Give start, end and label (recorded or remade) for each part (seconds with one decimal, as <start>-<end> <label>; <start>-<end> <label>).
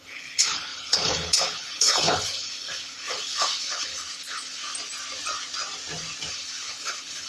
0.0-4.6 remade; 4.6-6.3 recorded; 6.3-7.3 remade